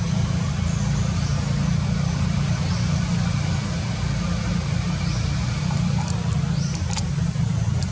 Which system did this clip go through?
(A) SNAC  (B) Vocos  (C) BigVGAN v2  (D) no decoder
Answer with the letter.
D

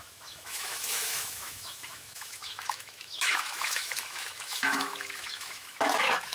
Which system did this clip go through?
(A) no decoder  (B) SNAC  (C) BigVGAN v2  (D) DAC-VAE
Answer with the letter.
D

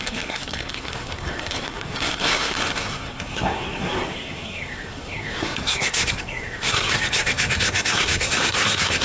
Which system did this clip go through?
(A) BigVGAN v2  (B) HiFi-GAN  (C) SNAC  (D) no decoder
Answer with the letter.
C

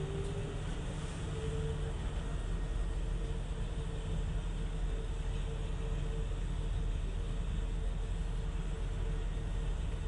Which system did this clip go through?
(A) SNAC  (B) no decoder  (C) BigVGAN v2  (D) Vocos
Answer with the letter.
B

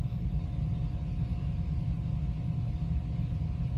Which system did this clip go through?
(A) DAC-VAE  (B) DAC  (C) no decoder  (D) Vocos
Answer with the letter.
C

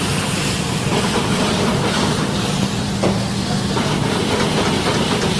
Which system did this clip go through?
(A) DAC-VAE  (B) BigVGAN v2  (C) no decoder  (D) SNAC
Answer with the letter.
B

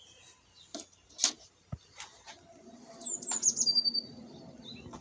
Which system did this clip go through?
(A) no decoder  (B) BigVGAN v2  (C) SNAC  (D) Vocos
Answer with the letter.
A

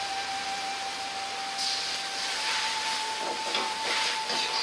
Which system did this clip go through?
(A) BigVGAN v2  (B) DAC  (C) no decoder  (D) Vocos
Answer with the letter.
C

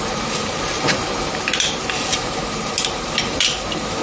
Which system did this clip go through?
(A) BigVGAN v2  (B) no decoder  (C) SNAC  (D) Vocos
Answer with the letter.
A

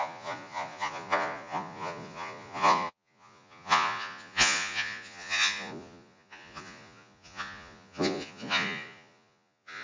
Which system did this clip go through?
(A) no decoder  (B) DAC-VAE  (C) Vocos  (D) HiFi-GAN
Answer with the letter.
C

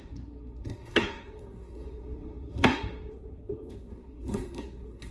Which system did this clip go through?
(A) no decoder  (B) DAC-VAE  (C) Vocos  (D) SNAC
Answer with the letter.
D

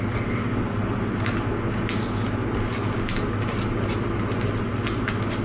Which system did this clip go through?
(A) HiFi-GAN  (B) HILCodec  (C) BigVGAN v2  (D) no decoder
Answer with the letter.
D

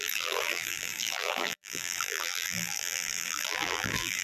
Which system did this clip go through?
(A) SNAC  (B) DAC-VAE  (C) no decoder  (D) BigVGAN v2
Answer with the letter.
D